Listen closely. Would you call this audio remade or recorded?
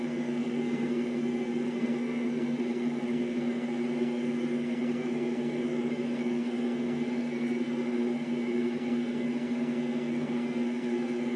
remade